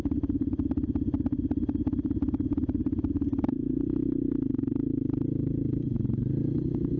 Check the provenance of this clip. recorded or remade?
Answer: recorded